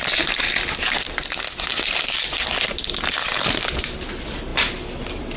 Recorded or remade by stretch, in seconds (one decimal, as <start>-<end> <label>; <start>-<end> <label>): 0.0-5.4 recorded